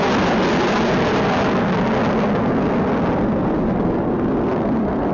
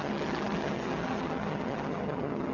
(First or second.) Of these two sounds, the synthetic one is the second